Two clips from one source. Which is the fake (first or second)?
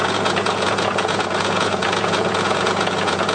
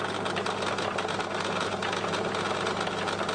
first